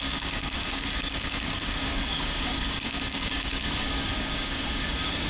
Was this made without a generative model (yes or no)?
no